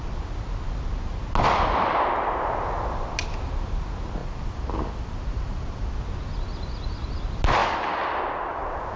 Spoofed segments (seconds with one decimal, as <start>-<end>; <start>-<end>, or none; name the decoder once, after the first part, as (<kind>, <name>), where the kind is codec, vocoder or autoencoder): 4.2-6.0 (vocoder, BigVGAN v2); 7.6-8.6